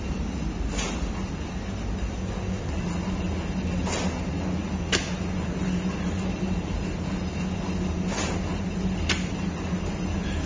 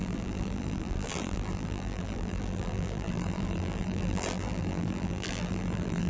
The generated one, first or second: second